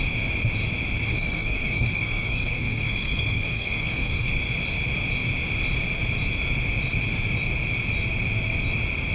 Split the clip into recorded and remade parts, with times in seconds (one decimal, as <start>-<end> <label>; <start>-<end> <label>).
0.0-1.1 recorded; 1.1-4.3 remade; 4.3-9.1 recorded